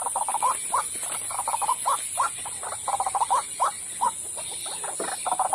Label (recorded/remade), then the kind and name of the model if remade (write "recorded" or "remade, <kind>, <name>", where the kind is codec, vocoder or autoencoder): recorded